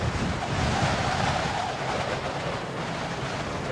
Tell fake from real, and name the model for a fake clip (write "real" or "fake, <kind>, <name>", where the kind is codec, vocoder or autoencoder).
real